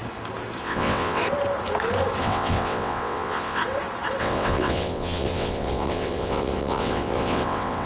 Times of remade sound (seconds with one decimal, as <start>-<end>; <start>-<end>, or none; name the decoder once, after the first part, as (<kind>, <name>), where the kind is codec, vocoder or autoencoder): 0.6-1.2 (vocoder, WaveNeXt); 2.2-3.6; 4.2-7.9